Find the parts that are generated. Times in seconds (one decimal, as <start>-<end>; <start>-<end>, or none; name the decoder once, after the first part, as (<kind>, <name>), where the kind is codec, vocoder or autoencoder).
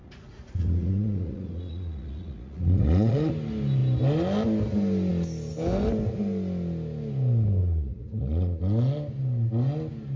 0.0-3.3 (vocoder, Vocos); 7.6-8.6